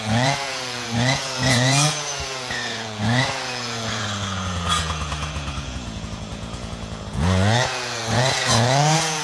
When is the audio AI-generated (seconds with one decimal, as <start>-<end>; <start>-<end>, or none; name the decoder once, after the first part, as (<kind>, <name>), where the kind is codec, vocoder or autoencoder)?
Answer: 0.0-9.2 (vocoder, Vocos)

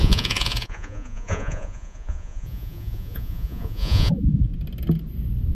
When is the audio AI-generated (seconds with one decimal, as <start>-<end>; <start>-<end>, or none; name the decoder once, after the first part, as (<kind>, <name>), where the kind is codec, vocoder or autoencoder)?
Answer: 0.0-4.5 (vocoder, Vocos)

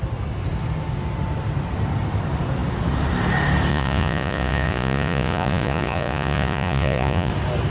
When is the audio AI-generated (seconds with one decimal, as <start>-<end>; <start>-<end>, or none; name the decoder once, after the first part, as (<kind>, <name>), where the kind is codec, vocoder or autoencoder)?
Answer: 3.7-7.3 (vocoder, Vocos)